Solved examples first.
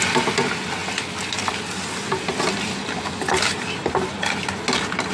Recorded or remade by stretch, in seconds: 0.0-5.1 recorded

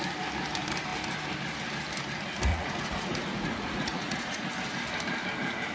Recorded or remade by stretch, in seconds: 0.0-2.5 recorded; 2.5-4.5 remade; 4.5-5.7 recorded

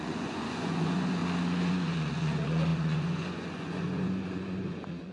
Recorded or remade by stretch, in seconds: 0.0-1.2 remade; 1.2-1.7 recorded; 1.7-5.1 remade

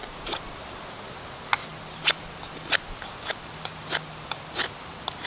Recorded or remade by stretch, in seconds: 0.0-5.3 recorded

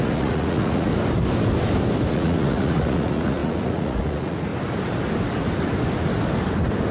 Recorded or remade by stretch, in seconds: 0.0-0.9 remade; 0.9-2.1 recorded; 2.1-4.5 remade; 4.5-6.9 recorded

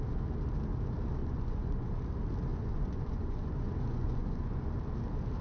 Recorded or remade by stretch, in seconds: 0.0-1.2 recorded; 1.2-1.9 remade; 1.9-2.5 recorded; 2.5-4.7 remade; 4.7-5.4 recorded